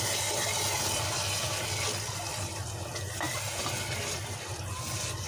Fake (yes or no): no